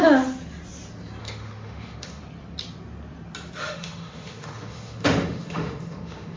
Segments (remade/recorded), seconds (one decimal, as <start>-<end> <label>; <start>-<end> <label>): 0.0-1.2 recorded; 1.2-2.2 remade; 2.2-3.6 recorded; 3.6-6.4 remade